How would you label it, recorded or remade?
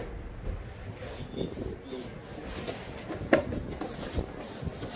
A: recorded